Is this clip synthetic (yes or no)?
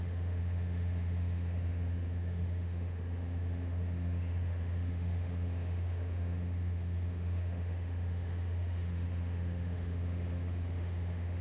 yes